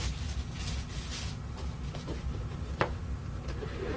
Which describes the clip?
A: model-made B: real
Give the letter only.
B